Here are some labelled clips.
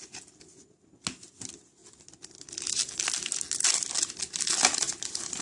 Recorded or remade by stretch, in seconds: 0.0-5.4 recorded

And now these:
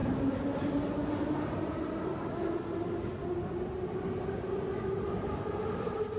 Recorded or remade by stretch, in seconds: 0.0-6.2 recorded

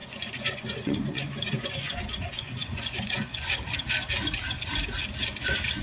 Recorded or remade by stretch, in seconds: 0.0-3.5 remade; 3.5-5.8 recorded

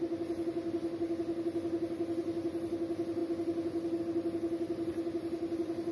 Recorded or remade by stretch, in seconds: 0.0-5.9 recorded